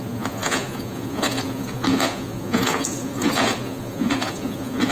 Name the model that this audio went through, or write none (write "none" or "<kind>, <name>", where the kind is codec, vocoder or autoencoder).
vocoder, Vocos